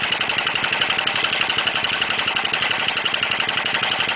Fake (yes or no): no